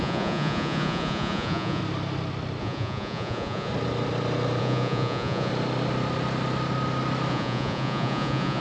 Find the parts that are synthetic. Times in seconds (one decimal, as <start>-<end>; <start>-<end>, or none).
0.0-1.8; 2.6-3.7; 4.6-5.5; 7.3-8.6